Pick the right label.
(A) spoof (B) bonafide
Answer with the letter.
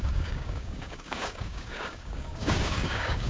A